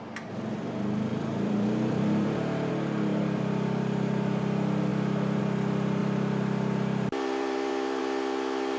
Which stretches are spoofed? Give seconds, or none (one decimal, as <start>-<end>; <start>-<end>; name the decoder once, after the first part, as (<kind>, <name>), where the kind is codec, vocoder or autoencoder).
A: 1.1-2.7 (vocoder, BigVGAN v2); 3.1-4.4; 4.9-5.4; 6.0-8.0